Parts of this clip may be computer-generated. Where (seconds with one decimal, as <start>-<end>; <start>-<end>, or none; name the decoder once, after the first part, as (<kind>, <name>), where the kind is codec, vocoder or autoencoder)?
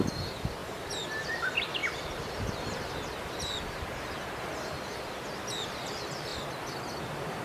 0.0-0.6 (vocoder, BigVGAN v2); 1.2-6.3; 7.0-7.4